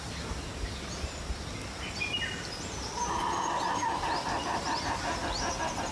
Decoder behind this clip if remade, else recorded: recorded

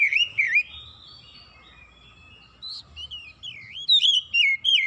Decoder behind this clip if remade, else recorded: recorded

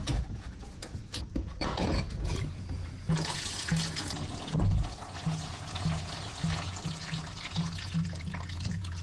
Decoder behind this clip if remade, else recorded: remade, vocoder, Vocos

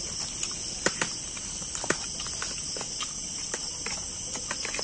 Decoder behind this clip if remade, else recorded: recorded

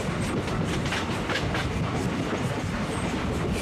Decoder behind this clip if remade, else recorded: recorded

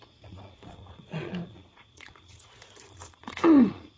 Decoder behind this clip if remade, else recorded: remade, vocoder, Vocos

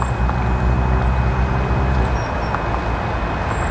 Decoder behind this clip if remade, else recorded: recorded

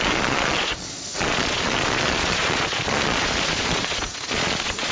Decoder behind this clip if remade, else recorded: remade, vocoder, Vocos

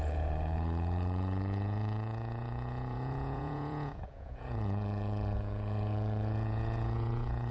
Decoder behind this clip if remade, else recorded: remade, vocoder, Vocos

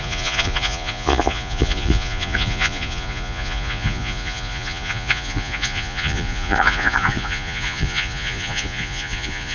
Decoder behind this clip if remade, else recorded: remade, vocoder, Vocos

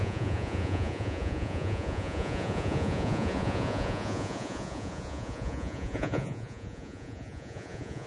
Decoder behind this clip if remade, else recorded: remade, vocoder, Vocos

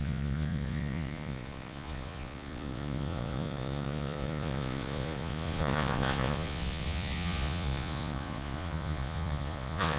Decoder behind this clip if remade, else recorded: remade, vocoder, Vocos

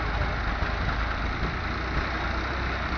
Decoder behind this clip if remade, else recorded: recorded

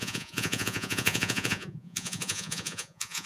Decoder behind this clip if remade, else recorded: remade, vocoder, Vocos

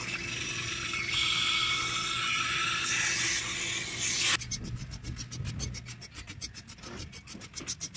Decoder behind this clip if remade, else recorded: recorded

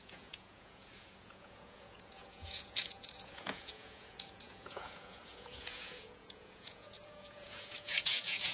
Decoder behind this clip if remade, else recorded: remade, vocoder, Vocos